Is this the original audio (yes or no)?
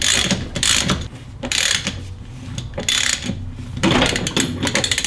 yes